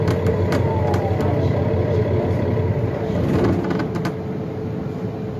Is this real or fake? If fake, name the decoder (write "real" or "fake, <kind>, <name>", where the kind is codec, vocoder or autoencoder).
real